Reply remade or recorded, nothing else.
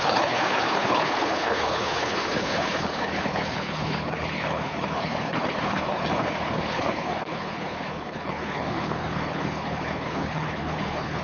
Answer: remade